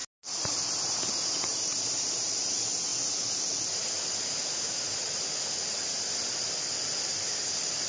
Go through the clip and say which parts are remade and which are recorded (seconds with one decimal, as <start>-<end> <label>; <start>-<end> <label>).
0.0-7.9 recorded